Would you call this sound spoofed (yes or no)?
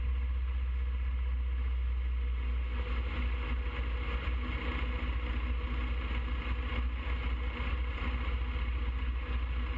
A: no